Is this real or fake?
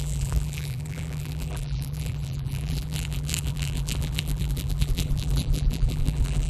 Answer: fake